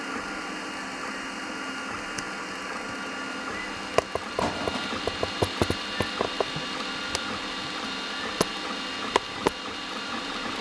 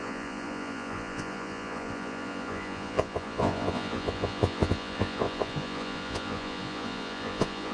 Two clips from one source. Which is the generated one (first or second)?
second